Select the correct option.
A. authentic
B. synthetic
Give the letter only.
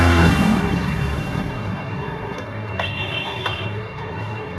B